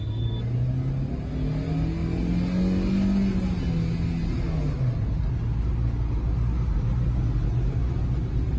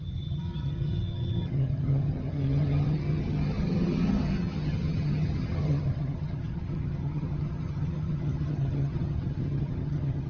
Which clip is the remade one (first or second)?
second